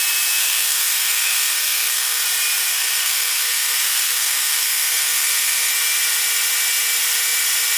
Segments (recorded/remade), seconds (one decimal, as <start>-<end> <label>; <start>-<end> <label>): 0.0-0.4 recorded; 0.4-2.2 remade; 2.2-2.7 recorded; 2.7-5.7 remade; 5.7-7.8 recorded